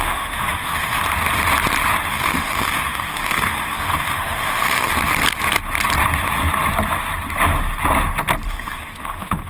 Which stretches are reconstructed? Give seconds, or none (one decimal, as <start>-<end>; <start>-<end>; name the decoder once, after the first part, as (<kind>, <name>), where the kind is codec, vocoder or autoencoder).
0.0-1.0 (autoencoder, DAC-VAE); 2.1-4.9; 8.5-9.5